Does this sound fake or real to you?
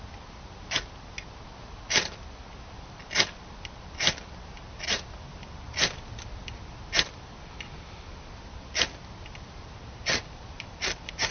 real